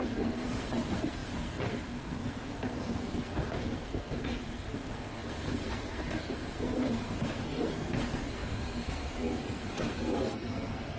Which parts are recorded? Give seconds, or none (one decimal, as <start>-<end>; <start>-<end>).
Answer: none